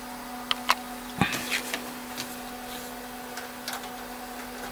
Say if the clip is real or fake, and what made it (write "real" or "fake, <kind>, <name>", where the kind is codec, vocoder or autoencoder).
real